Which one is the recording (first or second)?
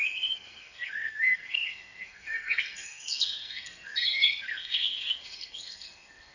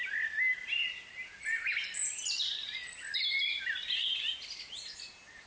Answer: second